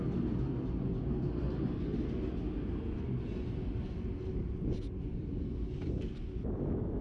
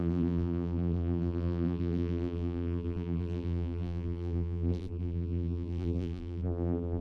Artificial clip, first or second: second